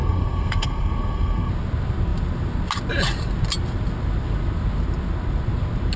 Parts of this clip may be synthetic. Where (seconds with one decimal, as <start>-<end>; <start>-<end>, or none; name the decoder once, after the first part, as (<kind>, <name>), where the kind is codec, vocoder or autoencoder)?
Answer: 0.0-1.5 (codec, SNAC)